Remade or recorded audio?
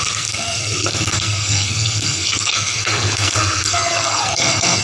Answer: remade